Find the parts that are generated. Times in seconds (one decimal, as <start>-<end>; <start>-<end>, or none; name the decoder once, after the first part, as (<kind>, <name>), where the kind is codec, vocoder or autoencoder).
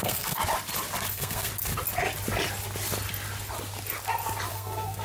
0.0-0.4 (codec, SNAC); 1.1-1.5; 4.5-5.0